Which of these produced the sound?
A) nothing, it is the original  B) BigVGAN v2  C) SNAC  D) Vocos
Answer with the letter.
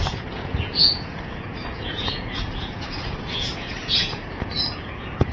D